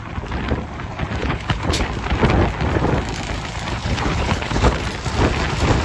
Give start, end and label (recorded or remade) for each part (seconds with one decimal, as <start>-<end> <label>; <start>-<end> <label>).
0.0-1.2 recorded; 1.2-1.8 remade; 1.8-3.8 recorded; 3.8-4.8 remade; 4.8-5.8 recorded